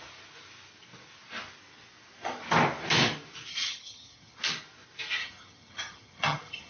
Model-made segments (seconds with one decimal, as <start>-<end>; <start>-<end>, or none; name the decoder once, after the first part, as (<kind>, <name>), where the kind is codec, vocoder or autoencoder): 3.5-4.4 (vocoder, HiFi-GAN); 5.2-6.7